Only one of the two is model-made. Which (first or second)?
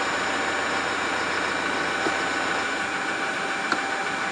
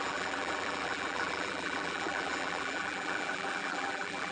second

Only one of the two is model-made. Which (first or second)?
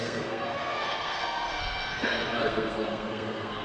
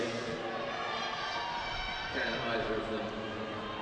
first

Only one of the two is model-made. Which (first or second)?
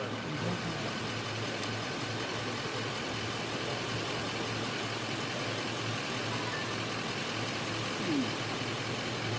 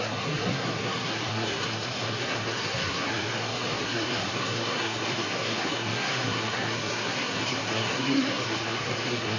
second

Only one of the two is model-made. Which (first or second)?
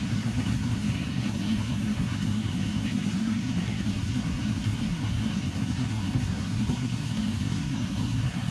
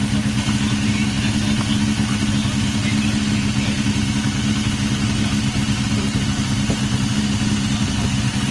first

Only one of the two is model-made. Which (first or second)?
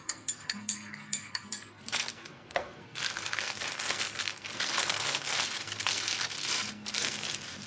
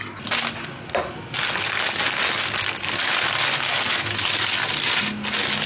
first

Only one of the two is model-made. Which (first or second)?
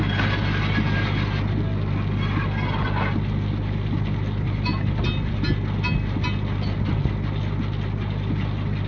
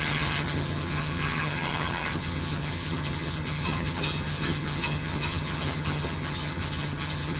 second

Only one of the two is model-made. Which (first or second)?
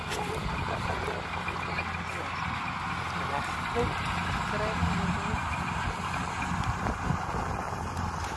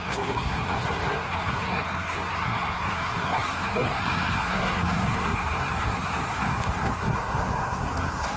second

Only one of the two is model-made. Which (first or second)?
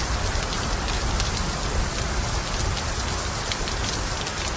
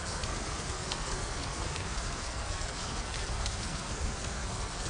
second